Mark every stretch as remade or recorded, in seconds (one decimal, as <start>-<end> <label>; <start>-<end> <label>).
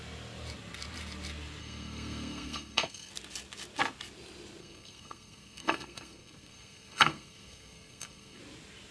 0.0-1.6 recorded; 1.6-3.1 remade; 3.1-4.6 recorded; 4.6-8.4 remade; 8.4-8.9 recorded